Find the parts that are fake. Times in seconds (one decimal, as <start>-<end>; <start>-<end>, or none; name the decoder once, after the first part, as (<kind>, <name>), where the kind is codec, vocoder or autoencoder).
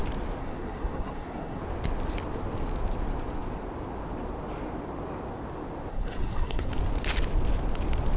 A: 0.4-1.6 (codec, SNAC); 5.9-6.7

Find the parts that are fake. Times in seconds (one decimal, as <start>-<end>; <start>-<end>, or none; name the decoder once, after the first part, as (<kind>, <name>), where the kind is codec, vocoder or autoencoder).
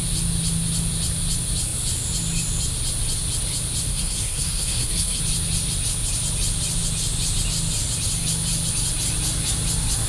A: 3.9-5.2 (codec, SNAC)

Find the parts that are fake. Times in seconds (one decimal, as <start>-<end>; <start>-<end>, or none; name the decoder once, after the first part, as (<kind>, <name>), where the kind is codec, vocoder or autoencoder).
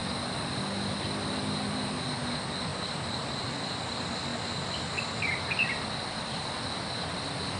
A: none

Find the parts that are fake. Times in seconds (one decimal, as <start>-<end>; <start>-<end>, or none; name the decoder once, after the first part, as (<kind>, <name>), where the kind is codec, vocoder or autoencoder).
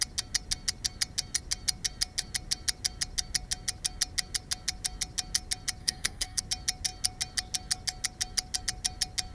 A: 5.8-6.4 (codec, SNAC)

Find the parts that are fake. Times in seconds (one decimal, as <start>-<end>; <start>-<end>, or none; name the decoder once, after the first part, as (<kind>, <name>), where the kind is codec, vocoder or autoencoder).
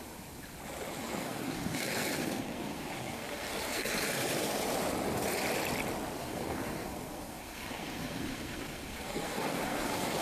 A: 1.0-3.9 (codec, SNAC); 6.2-10.2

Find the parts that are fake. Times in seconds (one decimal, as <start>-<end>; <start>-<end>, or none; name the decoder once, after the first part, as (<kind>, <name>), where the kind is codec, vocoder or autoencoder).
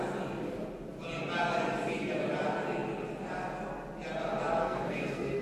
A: 4.6-5.4 (codec, SNAC)